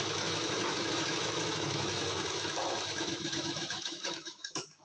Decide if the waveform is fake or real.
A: fake